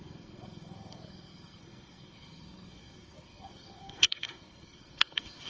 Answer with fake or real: fake